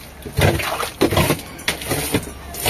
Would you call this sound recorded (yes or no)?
yes